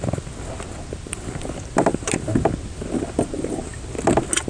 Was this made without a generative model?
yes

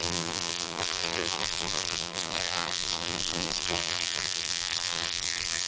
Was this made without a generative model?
no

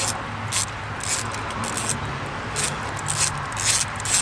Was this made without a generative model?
yes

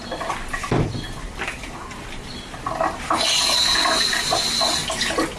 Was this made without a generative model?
yes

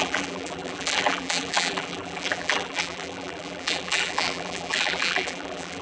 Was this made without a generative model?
no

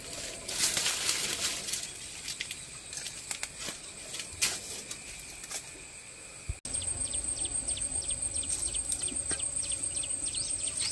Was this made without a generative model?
yes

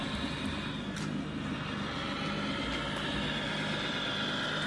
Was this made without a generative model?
yes